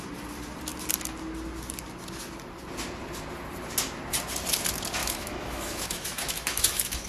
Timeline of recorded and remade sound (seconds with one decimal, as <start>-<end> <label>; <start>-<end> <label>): 0.0-5.0 recorded; 5.0-7.1 remade